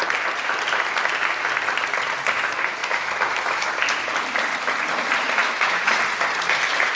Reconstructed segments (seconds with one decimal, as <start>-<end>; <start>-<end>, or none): 2.8-3.7; 5.4-6.0